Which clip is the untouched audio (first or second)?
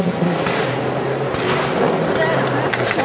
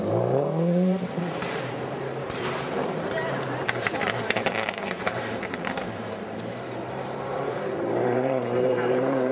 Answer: first